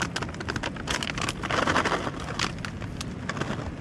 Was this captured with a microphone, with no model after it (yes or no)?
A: yes